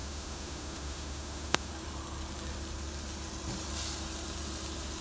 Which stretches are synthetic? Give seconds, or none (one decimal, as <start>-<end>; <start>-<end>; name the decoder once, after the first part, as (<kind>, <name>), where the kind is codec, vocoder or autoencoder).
0.0-1.7 (autoencoder, DAC-VAE)

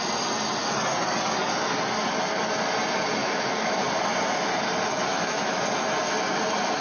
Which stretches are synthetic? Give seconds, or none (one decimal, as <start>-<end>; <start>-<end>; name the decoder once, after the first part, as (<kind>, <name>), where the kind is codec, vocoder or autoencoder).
3.2-3.8 (autoencoder, DAC-VAE); 5.1-5.6

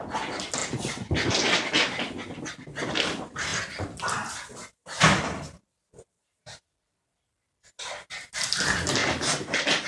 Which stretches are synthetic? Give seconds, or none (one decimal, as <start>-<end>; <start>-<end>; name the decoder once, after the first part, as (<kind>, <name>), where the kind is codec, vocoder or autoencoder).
none

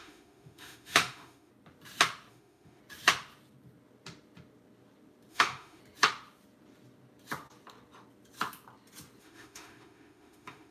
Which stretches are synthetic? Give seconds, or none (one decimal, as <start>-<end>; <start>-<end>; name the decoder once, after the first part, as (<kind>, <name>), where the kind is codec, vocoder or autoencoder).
0.0-1.5 (autoencoder, DAC-VAE); 2.3-2.8; 5.3-5.8; 9.2-10.7

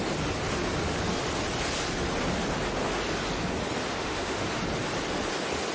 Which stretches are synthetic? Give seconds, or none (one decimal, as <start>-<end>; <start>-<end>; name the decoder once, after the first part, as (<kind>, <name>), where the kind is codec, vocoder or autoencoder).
3.9-4.5 (autoencoder, DAC-VAE)

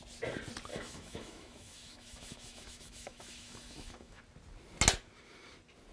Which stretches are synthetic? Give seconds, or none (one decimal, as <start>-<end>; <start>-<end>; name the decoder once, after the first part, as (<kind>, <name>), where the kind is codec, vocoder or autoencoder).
0.7-4.2 (autoencoder, DAC-VAE)

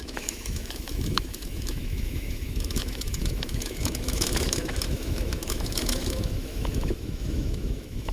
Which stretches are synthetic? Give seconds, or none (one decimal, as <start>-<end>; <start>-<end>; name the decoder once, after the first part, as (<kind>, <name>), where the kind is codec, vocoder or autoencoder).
0.0-8.1 (autoencoder, DAC-VAE)

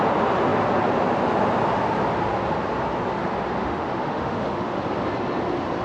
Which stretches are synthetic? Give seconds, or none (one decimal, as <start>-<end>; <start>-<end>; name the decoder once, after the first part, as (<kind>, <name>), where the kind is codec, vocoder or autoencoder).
3.6-4.8 (autoencoder, DAC-VAE)